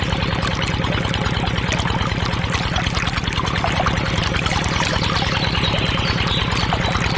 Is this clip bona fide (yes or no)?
yes